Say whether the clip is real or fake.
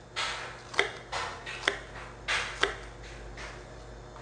real